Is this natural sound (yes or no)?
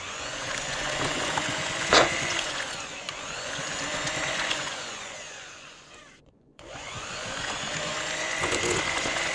no